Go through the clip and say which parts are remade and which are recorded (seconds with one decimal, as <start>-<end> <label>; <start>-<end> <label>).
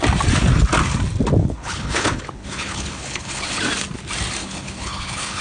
0.0-1.4 recorded; 1.4-3.6 remade; 3.6-4.4 recorded; 4.4-5.4 remade